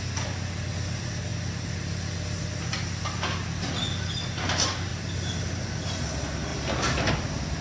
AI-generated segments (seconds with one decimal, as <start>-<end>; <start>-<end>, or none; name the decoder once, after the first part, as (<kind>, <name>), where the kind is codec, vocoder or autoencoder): none